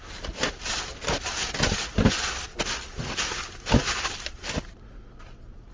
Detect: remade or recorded recorded